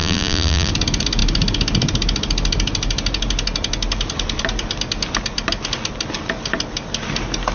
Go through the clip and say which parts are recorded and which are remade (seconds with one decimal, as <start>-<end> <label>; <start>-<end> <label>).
0.0-0.7 remade; 0.7-7.5 recorded